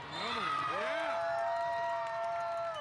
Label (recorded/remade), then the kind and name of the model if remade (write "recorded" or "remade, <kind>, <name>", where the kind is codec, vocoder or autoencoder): recorded